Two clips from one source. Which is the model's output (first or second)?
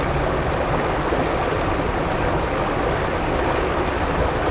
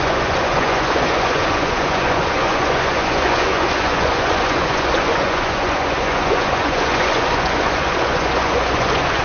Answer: second